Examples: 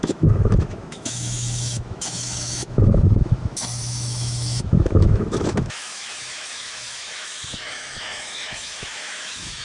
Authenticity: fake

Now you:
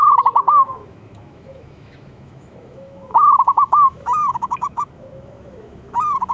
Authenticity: fake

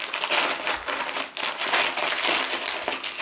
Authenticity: real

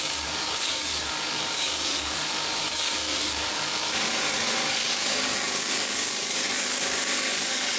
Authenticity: fake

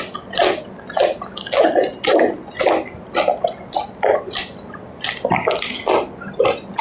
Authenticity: real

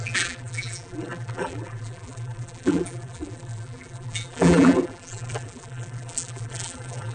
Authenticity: fake